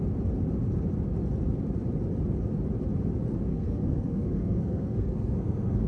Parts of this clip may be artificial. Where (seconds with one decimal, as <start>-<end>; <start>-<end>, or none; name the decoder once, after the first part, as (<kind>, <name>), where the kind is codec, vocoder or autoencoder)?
3.5-5.9 (codec, SNAC)

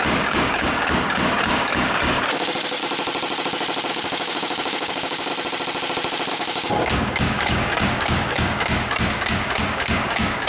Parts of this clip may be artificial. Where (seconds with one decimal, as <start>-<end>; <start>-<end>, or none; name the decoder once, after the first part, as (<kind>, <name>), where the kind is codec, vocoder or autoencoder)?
0.0-2.8 (codec, DAC); 3.9-5.3; 6.3-10.5

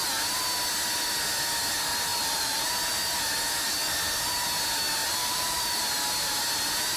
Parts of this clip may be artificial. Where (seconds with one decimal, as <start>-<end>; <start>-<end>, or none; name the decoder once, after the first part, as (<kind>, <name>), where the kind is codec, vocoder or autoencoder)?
2.1-2.7 (vocoder, BigVGAN v2); 5.0-5.8

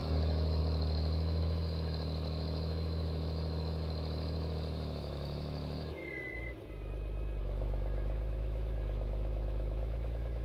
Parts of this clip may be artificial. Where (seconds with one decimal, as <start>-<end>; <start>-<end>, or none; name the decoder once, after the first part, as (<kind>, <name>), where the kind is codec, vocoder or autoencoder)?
0.0-6.0 (autoencoder, DAC-VAE); 7.4-10.4

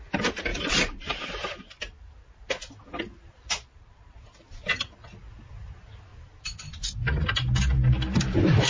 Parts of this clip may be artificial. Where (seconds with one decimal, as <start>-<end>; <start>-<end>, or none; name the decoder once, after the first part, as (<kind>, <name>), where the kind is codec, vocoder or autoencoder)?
none

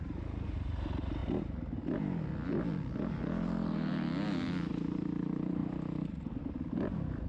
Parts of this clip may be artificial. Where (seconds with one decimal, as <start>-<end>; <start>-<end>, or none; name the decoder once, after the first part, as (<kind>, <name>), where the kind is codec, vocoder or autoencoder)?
0.0-1.2 (vocoder, BigVGAN v2); 4.7-5.6; 6.7-7.3

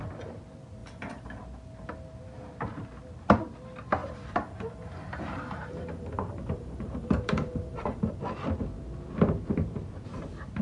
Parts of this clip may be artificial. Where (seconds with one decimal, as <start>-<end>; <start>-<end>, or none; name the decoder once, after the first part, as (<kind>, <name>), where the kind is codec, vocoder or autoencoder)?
0.8-1.4 (vocoder, BigVGAN v2); 4.0-8.2